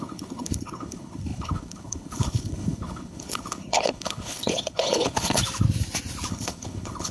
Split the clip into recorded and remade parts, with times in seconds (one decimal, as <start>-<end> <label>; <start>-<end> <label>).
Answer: 0.0-5.4 remade; 5.4-6.3 recorded; 6.3-7.1 remade